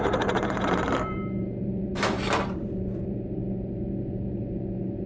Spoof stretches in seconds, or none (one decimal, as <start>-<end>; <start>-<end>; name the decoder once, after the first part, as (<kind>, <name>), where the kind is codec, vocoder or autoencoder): 0.0-3.4 (vocoder, BigVGAN v2); 4.0-5.1